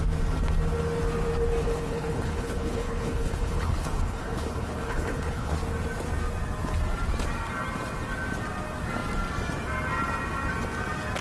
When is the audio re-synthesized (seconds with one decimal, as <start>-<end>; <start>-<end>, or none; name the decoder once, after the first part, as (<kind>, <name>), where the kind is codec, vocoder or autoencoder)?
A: 1.6-5.5 (codec, HILCodec)